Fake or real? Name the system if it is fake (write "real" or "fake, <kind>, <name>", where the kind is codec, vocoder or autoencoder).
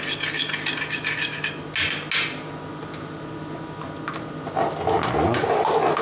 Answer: real